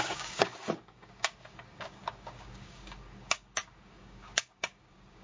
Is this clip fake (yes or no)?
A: yes